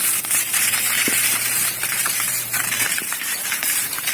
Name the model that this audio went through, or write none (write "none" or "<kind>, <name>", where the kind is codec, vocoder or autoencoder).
vocoder, BigVGAN v2